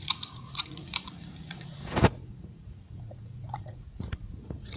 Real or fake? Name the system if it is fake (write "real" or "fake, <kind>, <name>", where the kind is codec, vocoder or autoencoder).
fake, vocoder, Vocos